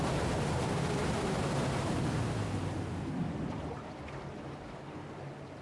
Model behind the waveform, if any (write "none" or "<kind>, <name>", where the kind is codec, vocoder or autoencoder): none